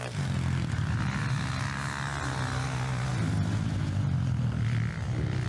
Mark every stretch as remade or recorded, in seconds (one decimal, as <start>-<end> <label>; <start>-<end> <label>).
0.0-5.5 recorded